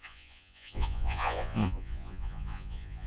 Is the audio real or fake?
fake